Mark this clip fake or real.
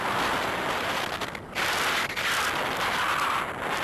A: real